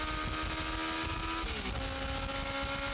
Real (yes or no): yes